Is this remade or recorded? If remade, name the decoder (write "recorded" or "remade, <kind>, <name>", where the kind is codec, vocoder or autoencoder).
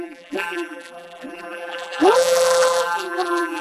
remade, vocoder, BigVGAN v2